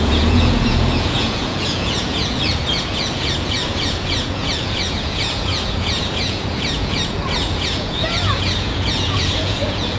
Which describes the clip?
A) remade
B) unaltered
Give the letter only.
A